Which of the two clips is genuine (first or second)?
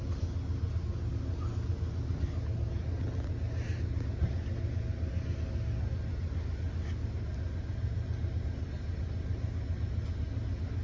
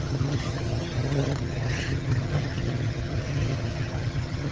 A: first